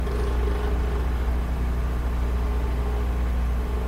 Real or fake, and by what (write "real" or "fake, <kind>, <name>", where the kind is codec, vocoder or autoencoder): real